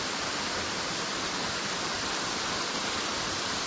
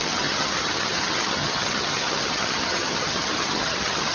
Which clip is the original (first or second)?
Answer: first